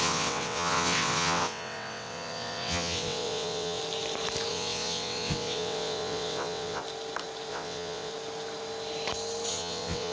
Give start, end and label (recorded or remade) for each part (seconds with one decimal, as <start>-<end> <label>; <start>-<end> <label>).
0.0-3.8 remade; 3.8-4.5 recorded; 4.5-6.8 remade; 6.8-7.5 recorded; 7.5-8.1 remade; 8.1-9.5 recorded; 9.5-10.1 remade